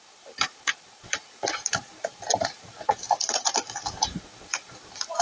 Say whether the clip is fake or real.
fake